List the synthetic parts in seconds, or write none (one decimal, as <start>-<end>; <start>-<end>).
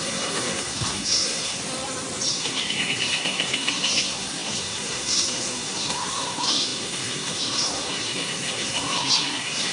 0.0-1.6; 2.3-9.7